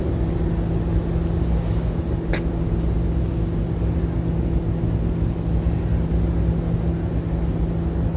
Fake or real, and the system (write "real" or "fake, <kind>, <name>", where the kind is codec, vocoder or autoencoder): real